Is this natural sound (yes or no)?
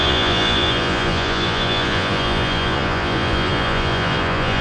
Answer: no